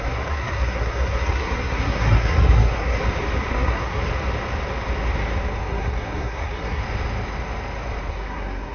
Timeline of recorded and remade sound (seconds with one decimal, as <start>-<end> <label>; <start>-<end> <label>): 0.0-3.0 remade; 3.0-3.5 recorded; 3.5-4.1 remade; 4.1-5.7 recorded; 5.7-6.8 remade; 6.8-8.1 recorded; 8.1-8.7 remade

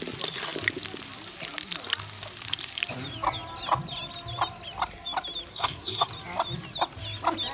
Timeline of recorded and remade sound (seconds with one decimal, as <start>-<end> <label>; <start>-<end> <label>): 0.0-5.5 recorded; 5.5-6.1 remade; 6.1-7.5 recorded

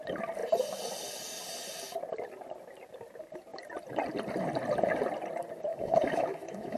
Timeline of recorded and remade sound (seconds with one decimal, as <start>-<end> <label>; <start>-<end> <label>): 0.0-5.7 recorded; 5.7-6.8 remade

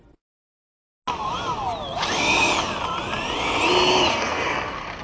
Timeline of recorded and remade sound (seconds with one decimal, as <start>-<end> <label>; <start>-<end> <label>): 0.0-4.1 recorded; 4.1-5.0 remade